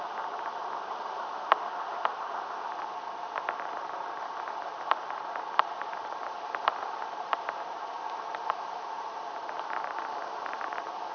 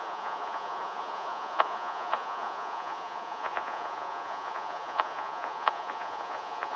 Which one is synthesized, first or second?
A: second